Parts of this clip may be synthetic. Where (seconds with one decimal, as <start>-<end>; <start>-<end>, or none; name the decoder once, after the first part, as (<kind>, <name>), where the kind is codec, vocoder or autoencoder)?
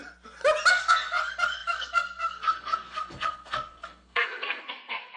0.7-5.2 (codec, SNAC)